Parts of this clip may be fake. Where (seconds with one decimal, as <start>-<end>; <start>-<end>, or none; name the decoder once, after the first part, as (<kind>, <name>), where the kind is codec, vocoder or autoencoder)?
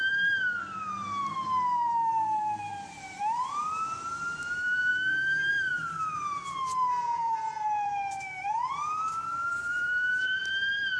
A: 0.0-10.4 (vocoder, BigVGAN v2)